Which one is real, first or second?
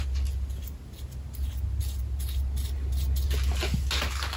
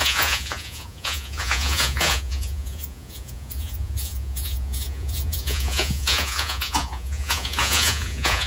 first